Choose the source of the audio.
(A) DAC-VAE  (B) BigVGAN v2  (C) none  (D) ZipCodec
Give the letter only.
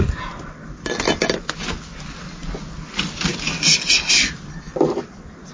C